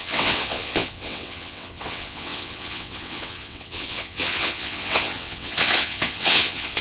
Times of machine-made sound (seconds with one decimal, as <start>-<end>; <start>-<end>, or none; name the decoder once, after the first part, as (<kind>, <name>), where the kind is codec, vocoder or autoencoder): 0.0-6.8 (vocoder, WaveNeXt)